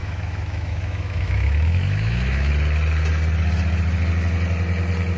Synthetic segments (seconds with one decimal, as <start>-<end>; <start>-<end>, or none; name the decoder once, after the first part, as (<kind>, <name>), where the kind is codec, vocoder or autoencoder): 0.0-2.5 (autoencoder, DAC-VAE)